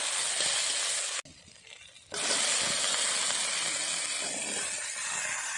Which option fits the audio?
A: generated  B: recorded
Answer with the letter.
B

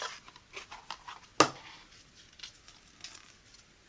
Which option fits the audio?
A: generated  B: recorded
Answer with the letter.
B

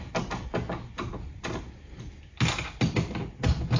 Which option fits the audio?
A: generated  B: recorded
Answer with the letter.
B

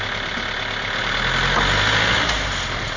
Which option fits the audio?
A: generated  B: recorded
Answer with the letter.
B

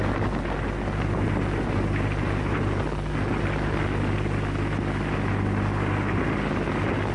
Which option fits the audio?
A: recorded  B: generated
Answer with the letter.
A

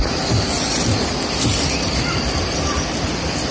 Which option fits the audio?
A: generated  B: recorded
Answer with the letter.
B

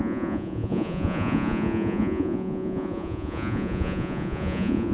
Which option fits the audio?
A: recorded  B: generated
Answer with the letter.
B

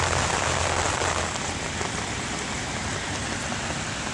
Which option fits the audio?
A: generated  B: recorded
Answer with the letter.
B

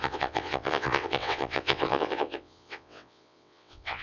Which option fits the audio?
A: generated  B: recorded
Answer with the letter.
A